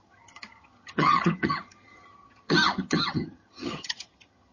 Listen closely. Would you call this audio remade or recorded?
remade